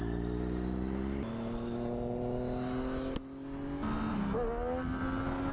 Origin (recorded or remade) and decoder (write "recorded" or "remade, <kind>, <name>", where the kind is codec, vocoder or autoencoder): recorded